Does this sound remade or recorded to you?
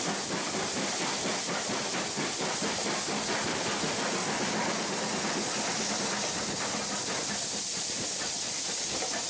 recorded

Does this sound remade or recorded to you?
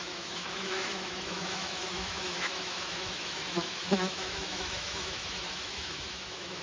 remade